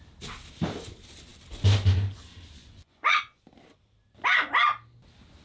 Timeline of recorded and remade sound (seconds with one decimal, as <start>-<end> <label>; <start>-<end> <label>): 0.0-2.6 recorded; 2.6-3.4 remade; 3.4-5.4 recorded